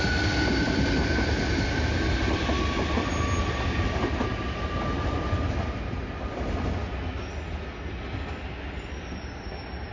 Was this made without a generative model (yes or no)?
yes